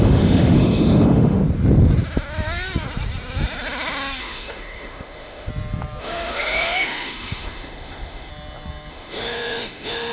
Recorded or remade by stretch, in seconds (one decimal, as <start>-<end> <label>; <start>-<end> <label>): 0.0-1.4 remade; 1.4-4.2 recorded; 4.2-5.5 remade; 5.5-6.0 recorded; 6.0-8.3 remade; 8.3-8.9 recorded; 8.9-10.1 remade